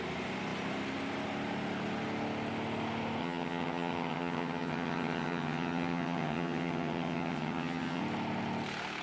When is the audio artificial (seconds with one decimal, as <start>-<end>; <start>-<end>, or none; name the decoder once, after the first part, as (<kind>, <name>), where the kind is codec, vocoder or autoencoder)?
3.2-8.0 (vocoder, HiFi-GAN)